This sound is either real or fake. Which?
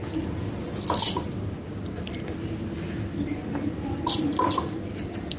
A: real